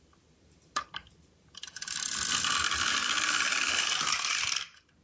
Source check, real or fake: fake